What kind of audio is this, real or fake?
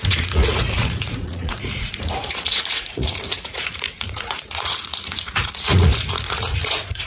fake